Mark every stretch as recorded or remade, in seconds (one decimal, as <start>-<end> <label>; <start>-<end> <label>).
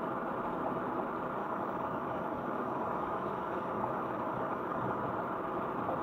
0.0-1.4 recorded; 1.4-5.0 remade; 5.0-6.0 recorded